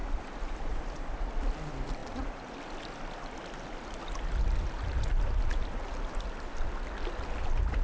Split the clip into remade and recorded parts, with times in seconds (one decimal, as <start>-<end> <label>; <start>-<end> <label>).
0.0-1.2 remade; 1.2-7.8 recorded